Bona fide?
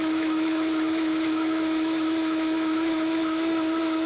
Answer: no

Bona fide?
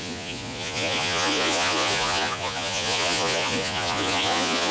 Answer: no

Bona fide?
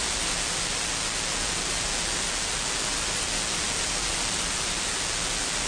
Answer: yes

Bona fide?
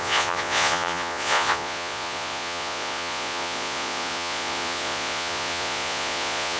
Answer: no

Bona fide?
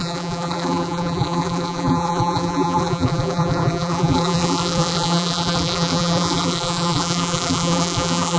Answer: no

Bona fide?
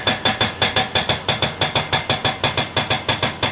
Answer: yes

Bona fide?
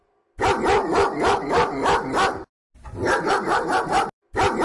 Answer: yes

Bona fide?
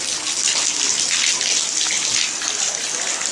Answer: yes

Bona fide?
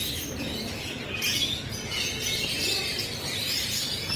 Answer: yes